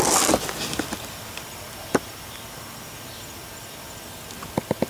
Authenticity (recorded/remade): recorded